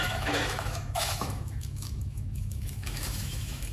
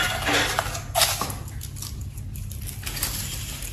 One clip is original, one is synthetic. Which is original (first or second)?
second